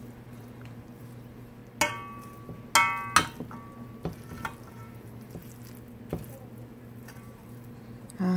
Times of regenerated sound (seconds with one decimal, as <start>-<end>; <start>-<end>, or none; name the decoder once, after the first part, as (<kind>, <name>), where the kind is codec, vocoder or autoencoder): 0.0-1.6 (vocoder, BigVGAN v2); 4.7-5.4; 7.0-8.4